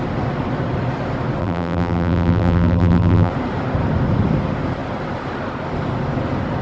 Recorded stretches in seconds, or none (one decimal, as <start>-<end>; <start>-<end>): 0.0-1.4; 3.3-6.6